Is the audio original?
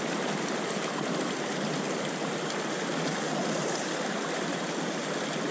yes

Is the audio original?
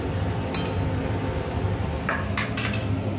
yes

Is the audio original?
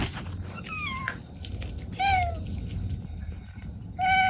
yes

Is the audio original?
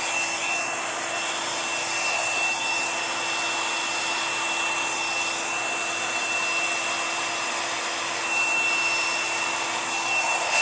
yes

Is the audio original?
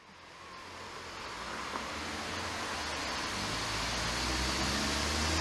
yes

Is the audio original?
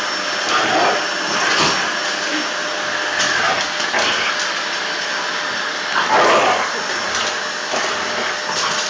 yes